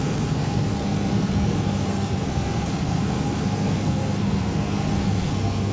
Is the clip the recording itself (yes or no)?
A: no